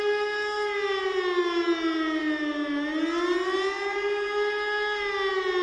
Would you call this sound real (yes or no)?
yes